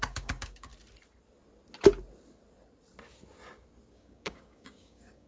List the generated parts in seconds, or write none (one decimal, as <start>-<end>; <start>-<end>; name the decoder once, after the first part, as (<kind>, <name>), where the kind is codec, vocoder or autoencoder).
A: 0.0-0.7 (codec, DAC); 3.9-5.3